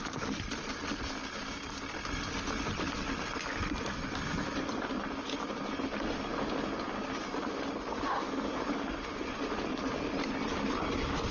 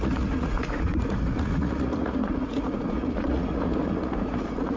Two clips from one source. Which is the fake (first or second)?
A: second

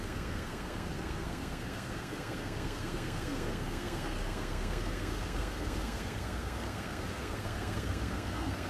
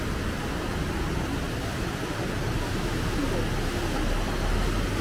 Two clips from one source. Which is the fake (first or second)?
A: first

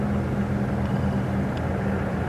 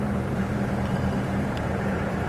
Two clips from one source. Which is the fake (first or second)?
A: second